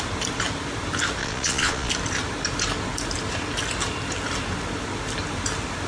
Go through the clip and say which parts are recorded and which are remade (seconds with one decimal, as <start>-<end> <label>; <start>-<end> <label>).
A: 0.0-1.2 recorded; 1.2-1.9 remade; 1.9-5.9 recorded